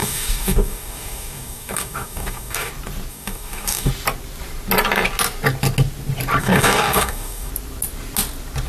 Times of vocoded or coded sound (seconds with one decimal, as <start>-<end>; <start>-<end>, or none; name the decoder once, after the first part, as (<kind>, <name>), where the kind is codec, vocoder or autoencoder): 0.0-2.7 (codec, DAC); 3.1-3.9; 6.4-7.5